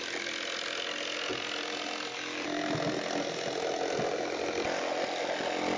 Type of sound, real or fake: real